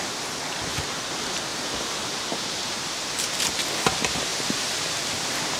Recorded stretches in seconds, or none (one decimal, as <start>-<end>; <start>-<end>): 0.0-1.5; 3.2-4.3